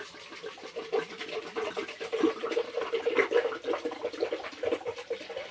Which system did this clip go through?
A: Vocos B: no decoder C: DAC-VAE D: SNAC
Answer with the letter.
B